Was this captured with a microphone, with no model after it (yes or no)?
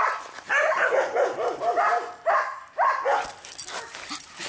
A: yes